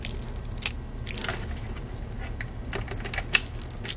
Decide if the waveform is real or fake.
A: real